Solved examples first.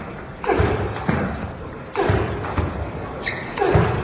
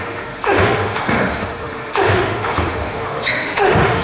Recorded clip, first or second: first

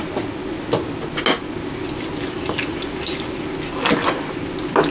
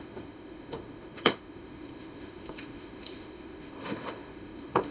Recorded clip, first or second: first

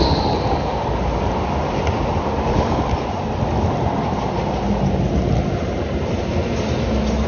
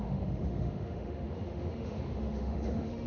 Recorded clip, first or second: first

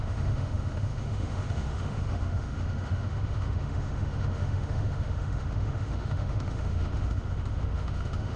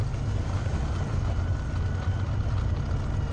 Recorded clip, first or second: second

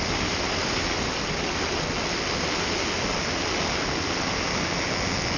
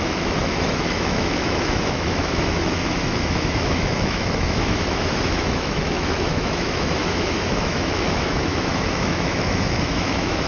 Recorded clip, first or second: first